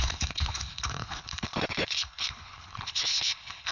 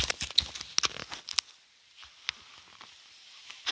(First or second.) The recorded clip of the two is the second